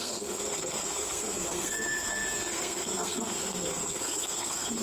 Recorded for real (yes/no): no